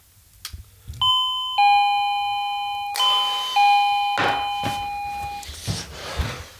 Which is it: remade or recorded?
recorded